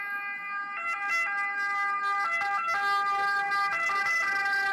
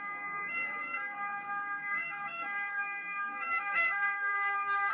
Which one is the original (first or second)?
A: first